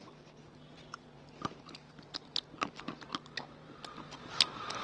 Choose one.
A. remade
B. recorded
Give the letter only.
B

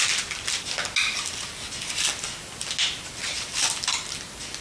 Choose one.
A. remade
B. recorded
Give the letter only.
B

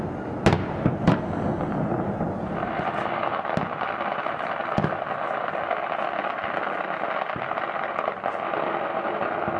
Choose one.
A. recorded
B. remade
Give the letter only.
A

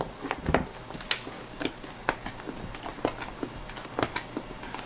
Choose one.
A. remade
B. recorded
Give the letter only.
B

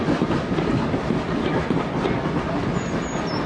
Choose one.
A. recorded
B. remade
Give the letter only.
A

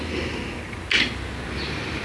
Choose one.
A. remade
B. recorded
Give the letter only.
B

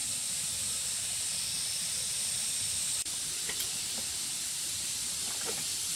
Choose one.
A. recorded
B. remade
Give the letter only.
B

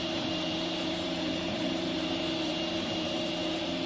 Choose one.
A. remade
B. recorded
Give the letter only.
A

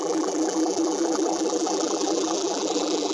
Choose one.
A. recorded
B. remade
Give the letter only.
B